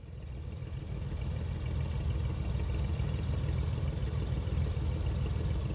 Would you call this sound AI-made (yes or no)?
no